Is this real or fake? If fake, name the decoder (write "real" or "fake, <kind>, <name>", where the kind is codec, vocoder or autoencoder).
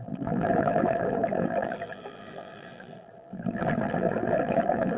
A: fake, vocoder, BigVGAN v2